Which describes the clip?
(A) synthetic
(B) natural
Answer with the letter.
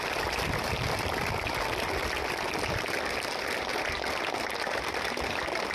B